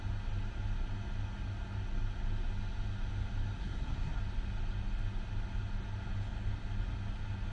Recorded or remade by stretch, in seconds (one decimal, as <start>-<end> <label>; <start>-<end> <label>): 0.0-3.6 recorded; 3.6-4.2 remade; 4.2-7.5 recorded